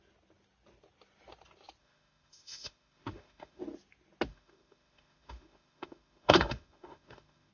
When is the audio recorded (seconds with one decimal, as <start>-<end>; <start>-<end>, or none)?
0.0-1.8; 3.6-4.3